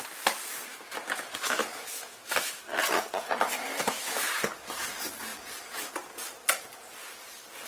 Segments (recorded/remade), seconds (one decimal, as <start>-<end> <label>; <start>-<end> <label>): 0.0-0.7 recorded; 0.7-2.6 remade; 2.6-3.7 recorded; 3.7-4.4 remade; 4.4-7.7 recorded

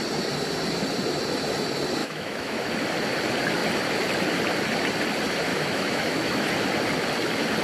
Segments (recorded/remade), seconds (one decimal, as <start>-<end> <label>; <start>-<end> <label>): 0.0-2.0 recorded; 2.0-2.7 remade; 2.7-5.5 recorded; 5.5-6.5 remade; 6.5-7.6 recorded

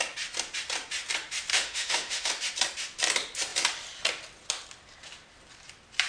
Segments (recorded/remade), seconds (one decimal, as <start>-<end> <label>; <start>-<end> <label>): 0.0-1.5 recorded; 1.5-2.3 remade; 2.3-6.1 recorded

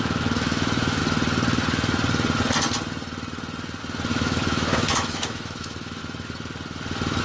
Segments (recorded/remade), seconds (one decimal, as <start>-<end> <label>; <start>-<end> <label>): 0.0-1.0 remade; 1.0-4.1 recorded; 4.1-6.0 remade; 6.0-7.2 recorded